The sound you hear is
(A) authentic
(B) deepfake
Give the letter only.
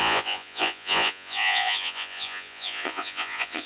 B